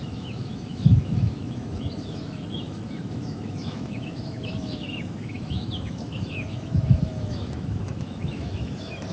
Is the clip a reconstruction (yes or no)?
yes